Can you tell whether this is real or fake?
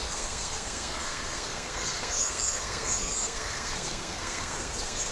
fake